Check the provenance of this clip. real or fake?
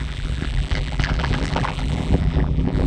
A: fake